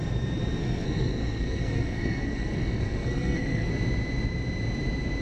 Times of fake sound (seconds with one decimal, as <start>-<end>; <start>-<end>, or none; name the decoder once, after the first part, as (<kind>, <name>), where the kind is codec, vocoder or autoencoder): 0.6-3.7 (codec, SNAC)